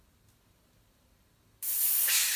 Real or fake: real